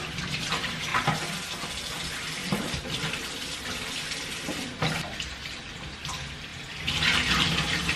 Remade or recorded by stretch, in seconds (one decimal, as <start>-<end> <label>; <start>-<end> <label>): 0.0-0.9 remade; 0.9-1.9 recorded; 1.9-3.5 remade; 3.5-6.0 recorded; 6.0-8.0 remade